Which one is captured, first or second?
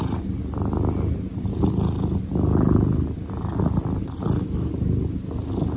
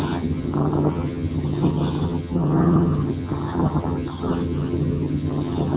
first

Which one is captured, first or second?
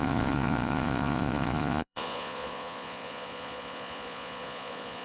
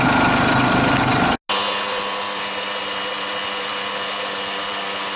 second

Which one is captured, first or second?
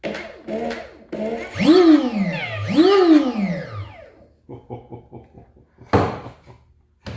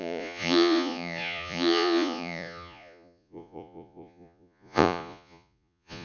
first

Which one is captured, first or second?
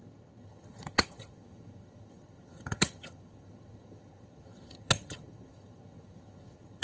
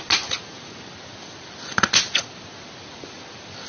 second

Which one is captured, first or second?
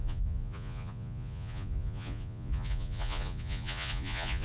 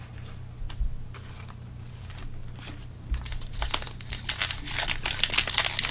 second